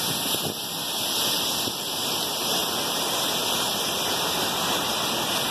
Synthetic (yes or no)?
no